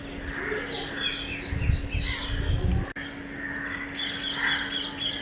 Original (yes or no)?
yes